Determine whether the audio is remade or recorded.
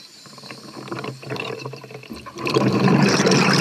remade